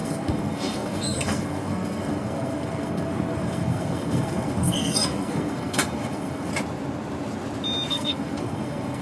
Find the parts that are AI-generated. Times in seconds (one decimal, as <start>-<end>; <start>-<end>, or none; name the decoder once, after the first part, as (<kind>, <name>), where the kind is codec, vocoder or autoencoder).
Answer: 0.0-6.5 (codec, SNAC); 7.9-9.0